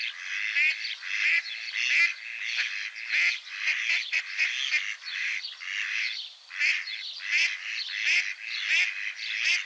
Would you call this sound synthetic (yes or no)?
no